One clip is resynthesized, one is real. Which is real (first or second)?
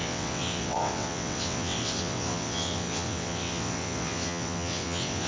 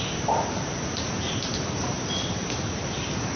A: second